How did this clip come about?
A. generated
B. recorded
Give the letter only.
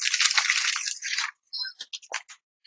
B